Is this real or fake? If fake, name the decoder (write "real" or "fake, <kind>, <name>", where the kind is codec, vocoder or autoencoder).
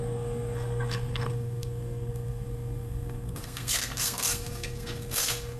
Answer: fake, codec, SNAC